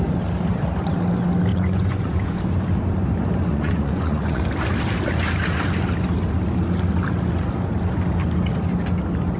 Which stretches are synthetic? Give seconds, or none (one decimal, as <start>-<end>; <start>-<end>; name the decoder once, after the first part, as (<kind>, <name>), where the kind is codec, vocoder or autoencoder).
1.5-2.4 (vocoder, Vocos); 3.5-4.4